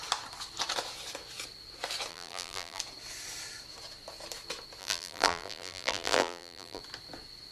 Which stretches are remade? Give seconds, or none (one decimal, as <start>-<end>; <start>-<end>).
2.1-2.8; 4.8-6.8